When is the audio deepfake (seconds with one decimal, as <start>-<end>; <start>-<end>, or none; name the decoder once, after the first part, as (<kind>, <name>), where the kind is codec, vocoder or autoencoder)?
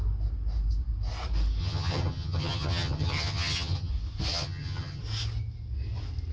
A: 1.6-3.9 (vocoder, HiFi-GAN); 4.3-5.0